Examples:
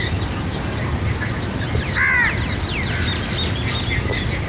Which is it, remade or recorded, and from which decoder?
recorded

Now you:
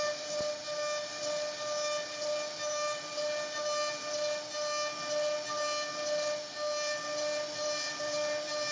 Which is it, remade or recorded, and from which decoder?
recorded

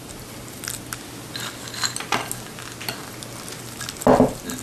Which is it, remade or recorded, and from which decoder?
recorded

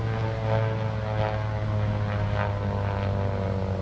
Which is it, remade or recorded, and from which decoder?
recorded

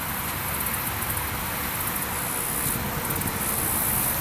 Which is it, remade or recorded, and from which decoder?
recorded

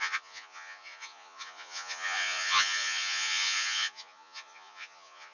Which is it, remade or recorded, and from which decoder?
remade, vocoder, Vocos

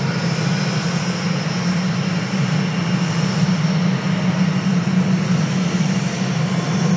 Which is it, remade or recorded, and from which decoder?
recorded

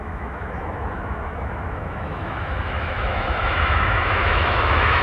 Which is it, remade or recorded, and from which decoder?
remade, autoencoder, DAC-VAE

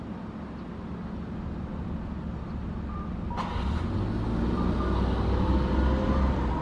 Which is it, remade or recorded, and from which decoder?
recorded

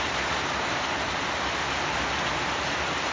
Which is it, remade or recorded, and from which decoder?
recorded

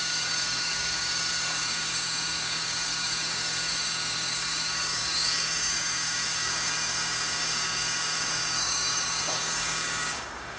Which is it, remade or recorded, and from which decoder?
remade, codec, DAC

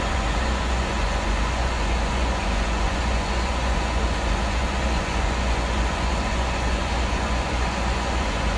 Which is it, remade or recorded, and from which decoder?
remade, vocoder, Vocos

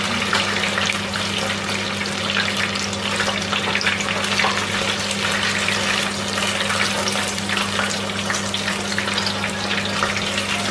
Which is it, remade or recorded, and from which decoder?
recorded